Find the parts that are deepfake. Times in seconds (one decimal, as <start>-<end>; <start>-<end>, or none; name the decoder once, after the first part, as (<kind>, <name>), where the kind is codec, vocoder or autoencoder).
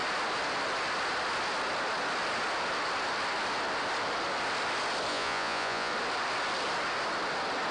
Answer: 5.1-5.9 (vocoder, Vocos)